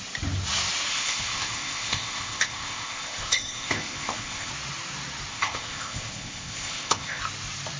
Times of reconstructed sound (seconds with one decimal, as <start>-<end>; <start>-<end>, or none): 0.9-4.5; 5.3-7.2